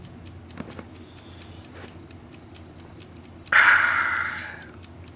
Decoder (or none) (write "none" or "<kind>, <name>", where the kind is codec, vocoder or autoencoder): none